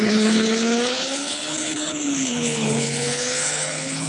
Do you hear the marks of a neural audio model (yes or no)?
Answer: yes